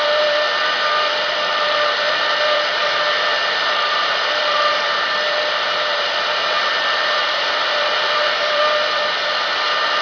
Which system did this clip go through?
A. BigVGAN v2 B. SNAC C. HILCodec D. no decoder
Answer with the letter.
A